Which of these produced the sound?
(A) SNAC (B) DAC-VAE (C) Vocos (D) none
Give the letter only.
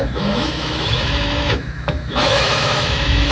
B